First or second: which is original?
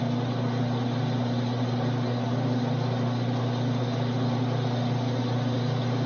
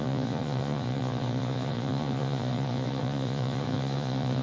first